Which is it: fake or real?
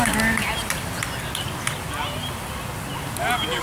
real